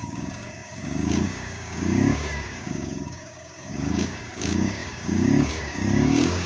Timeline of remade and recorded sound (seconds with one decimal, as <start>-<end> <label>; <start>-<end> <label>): 0.0-6.5 remade